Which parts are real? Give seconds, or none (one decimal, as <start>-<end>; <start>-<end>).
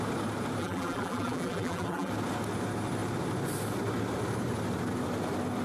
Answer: 0.0-0.6; 2.1-5.6